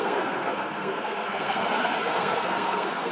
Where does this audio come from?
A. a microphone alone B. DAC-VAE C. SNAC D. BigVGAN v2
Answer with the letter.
C